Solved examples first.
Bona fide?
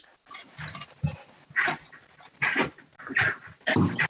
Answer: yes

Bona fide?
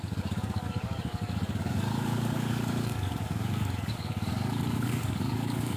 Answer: no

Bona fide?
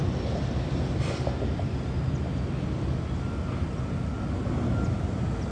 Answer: yes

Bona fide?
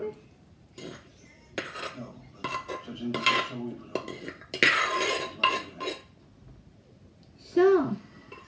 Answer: yes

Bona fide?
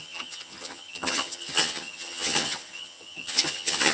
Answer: no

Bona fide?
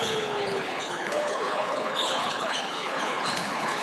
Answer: no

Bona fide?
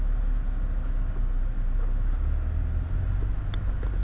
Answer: yes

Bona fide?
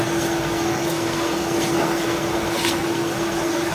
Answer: no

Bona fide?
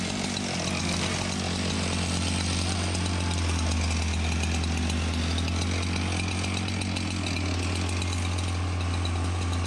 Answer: yes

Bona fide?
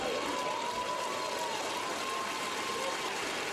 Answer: yes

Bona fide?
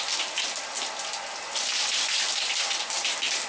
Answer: yes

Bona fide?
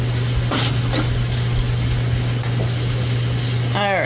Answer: yes